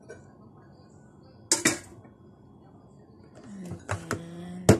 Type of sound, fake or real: real